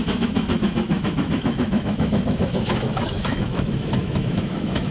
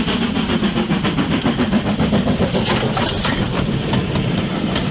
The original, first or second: second